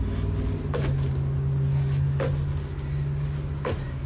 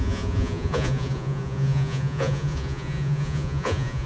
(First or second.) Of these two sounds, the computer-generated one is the second